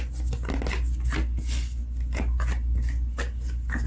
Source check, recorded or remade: recorded